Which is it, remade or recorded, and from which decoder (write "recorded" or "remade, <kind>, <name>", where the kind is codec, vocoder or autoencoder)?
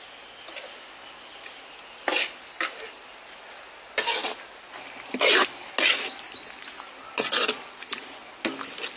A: recorded